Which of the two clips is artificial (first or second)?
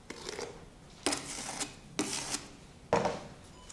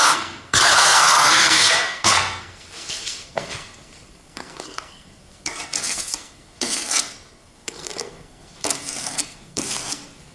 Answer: second